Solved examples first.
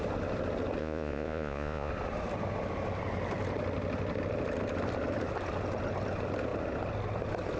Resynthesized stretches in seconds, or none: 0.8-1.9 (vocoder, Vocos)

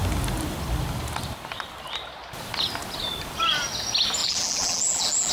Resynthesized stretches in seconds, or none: 4.2-5.3 (vocoder, BigVGAN v2)

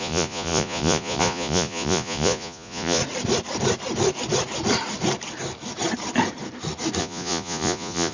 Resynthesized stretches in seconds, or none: 0.0-3.0 (vocoder, Vocos); 7.0-8.1